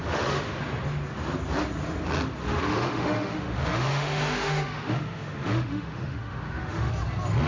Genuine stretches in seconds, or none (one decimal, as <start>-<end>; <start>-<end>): 0.5-2.4; 6.9-7.5